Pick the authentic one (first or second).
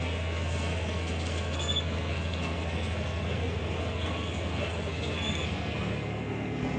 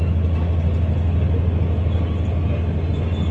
second